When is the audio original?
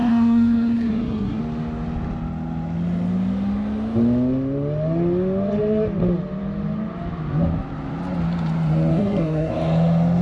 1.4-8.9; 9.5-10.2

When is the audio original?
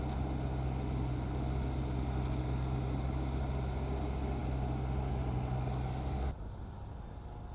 0.0-7.5